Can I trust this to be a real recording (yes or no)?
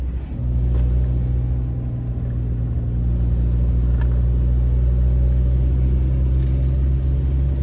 yes